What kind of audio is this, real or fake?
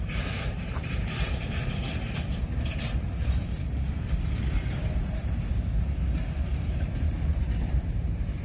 fake